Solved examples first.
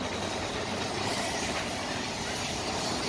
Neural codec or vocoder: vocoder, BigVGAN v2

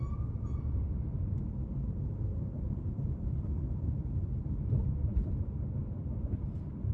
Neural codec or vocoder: vocoder, BigVGAN v2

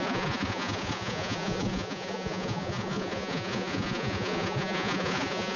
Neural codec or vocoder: vocoder, Vocos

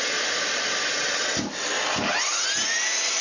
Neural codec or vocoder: none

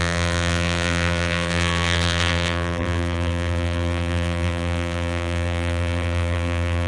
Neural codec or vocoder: vocoder, BigVGAN v2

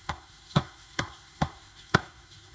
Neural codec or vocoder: codec, SNAC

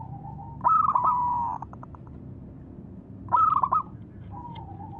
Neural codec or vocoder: none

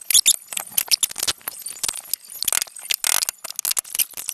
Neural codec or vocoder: none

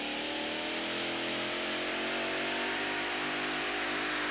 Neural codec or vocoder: none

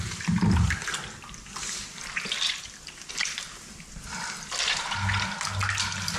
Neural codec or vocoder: vocoder, BigVGAN v2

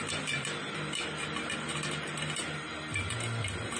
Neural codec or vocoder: none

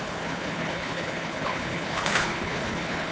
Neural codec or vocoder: codec, HILCodec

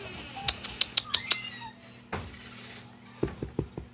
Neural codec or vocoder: none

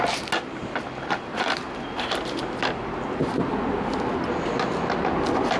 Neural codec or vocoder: none